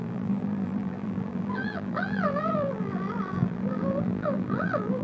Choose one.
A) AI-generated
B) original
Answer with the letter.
A